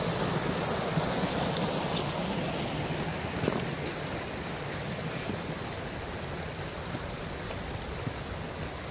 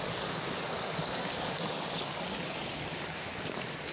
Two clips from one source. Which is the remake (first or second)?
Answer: second